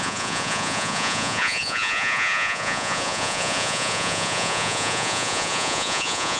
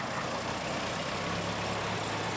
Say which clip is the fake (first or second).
first